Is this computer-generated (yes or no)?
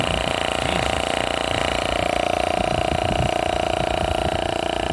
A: no